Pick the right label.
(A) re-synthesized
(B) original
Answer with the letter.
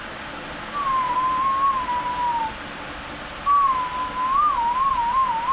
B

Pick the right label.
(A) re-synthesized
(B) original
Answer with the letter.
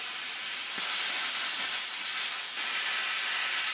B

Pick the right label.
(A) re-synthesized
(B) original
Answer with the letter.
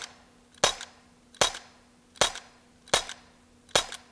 B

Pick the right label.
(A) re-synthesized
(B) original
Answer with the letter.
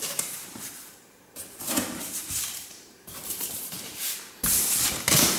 A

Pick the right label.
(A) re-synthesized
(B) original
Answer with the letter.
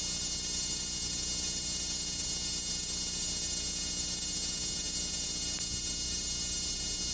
A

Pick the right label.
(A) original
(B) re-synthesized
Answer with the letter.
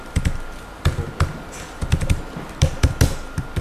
A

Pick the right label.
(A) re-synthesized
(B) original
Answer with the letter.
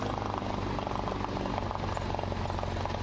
B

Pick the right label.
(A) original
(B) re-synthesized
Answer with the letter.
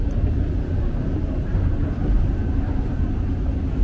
A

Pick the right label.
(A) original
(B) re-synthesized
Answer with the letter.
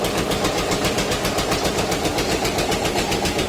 B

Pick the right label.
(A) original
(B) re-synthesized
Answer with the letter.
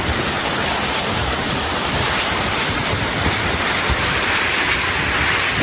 B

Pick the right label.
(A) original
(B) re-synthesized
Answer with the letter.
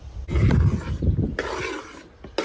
A